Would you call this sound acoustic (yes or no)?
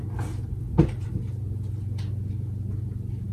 yes